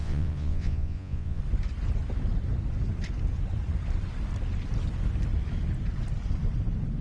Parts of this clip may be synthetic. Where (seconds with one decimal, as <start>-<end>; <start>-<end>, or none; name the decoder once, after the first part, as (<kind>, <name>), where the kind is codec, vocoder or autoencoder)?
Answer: 0.0-1.4 (vocoder, Vocos)